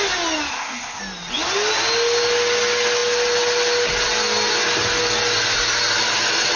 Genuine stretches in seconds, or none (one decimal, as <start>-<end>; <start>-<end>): 0.0-0.5; 1.0-6.6